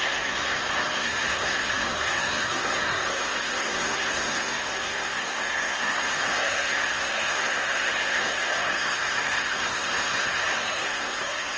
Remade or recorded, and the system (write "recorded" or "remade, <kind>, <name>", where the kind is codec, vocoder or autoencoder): remade, codec, SNAC